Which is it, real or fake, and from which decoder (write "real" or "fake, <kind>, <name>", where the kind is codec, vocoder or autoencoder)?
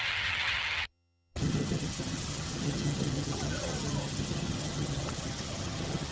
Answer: fake, vocoder, HiFi-GAN